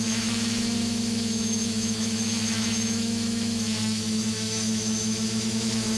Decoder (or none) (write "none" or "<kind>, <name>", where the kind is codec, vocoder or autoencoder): autoencoder, DAC-VAE